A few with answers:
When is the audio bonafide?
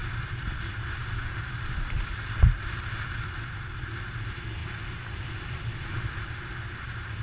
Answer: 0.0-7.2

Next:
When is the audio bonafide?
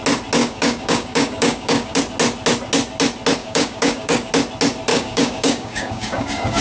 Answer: 0.0-0.4; 2.0-3.4; 4.3-4.9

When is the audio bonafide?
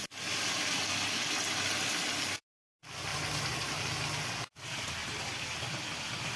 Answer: 0.0-3.1; 3.8-5.0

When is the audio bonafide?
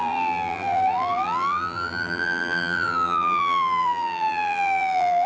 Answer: none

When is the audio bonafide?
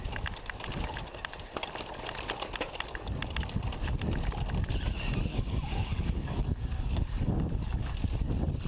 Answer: 0.0-5.3; 7.9-8.7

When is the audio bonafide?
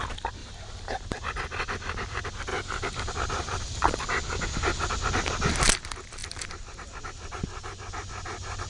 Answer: 0.0-0.4; 1.0-2.5; 4.0-6.2; 7.8-8.7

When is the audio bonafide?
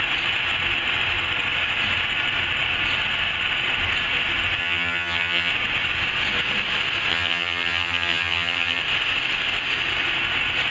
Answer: 0.0-4.6; 5.5-7.1; 8.8-10.7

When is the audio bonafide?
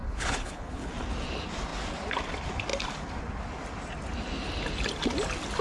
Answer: 0.9-5.6